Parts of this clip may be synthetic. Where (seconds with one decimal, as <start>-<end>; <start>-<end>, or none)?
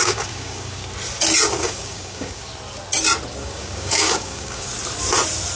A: 0.0-0.8; 1.6-2.5; 3.3-4.7